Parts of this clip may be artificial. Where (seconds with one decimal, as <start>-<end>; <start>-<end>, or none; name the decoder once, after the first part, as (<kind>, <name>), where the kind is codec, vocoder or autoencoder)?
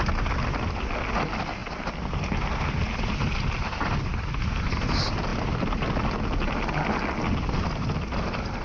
none